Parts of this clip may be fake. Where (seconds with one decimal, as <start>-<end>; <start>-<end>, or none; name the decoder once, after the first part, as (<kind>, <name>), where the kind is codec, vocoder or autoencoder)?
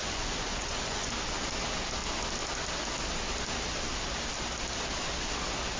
0.0-1.1 (vocoder, Vocos)